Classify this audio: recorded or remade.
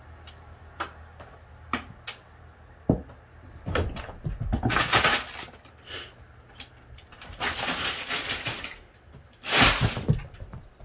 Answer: recorded